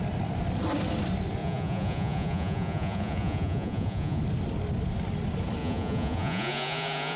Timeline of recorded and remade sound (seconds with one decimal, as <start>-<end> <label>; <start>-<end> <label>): 0.0-1.4 recorded; 1.4-4.2 remade; 4.2-5.6 recorded; 5.6-7.2 remade